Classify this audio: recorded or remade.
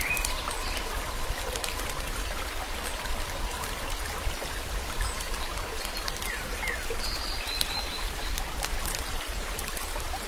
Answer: remade